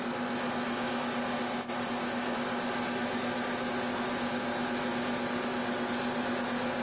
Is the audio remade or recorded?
recorded